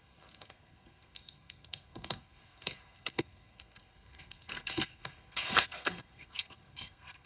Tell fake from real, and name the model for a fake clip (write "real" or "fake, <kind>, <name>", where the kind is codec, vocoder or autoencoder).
fake, codec, SNAC